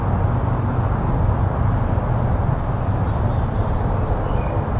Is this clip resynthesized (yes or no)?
no